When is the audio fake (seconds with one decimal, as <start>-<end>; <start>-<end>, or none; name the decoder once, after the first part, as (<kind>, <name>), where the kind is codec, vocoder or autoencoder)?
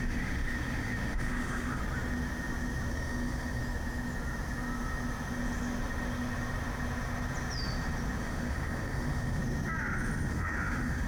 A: 0.0-1.8 (autoencoder, DAC-VAE); 2.9-3.6; 8.2-9.4; 10.3-11.1